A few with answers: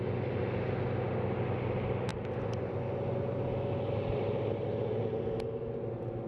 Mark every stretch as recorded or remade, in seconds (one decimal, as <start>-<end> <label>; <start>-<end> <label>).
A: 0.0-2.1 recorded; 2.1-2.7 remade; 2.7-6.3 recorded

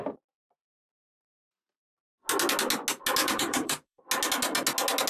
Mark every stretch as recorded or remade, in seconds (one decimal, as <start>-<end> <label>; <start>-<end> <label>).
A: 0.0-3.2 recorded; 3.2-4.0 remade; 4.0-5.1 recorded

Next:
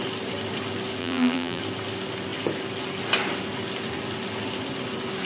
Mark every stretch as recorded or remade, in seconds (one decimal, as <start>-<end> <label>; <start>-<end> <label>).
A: 0.0-1.0 recorded; 1.0-1.6 remade; 1.6-5.3 recorded

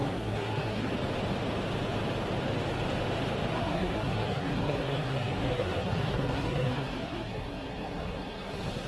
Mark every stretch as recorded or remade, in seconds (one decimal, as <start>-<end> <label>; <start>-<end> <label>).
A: 0.0-0.9 remade; 0.9-3.5 recorded; 3.5-8.9 remade

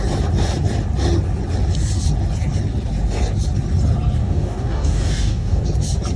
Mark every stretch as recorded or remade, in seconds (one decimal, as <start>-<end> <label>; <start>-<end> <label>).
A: 0.0-4.2 recorded; 4.2-5.6 remade; 5.6-6.2 recorded

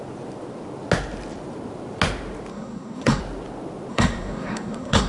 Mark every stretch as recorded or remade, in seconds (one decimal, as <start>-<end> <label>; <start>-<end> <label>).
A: 0.0-2.5 recorded; 2.5-3.2 remade; 3.2-3.9 recorded; 3.9-5.1 remade